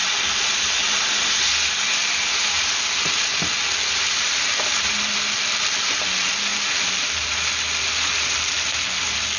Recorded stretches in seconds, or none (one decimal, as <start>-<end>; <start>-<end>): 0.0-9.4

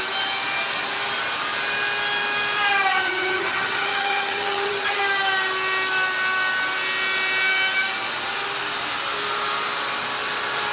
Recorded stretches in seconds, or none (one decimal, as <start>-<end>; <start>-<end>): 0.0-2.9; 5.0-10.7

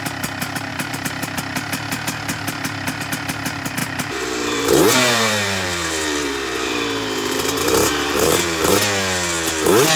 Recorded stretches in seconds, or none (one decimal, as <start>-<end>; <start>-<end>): 0.0-0.7; 1.4-3.8; 8.7-10.0